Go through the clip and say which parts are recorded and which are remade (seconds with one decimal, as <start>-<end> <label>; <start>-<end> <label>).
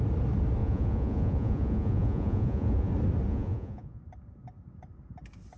0.0-0.6 recorded; 0.6-2.9 remade; 2.9-3.3 recorded; 3.3-4.0 remade; 4.0-5.6 recorded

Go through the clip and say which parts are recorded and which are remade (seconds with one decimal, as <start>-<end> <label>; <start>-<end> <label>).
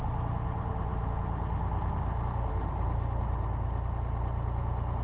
0.0-5.0 recorded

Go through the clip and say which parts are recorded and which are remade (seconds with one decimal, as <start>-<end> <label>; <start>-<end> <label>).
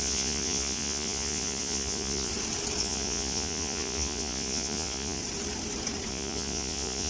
0.0-2.3 remade; 2.3-2.8 recorded; 2.8-5.2 remade; 5.2-6.1 recorded; 6.1-7.1 remade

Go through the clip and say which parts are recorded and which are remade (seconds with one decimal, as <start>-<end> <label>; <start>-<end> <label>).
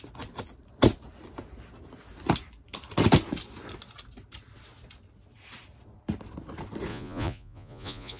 0.0-6.9 recorded; 6.9-8.2 remade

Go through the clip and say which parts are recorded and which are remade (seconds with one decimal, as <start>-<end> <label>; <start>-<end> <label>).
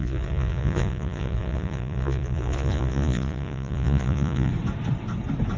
0.0-4.5 remade; 4.5-5.6 recorded